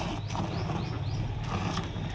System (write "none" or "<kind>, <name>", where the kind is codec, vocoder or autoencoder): none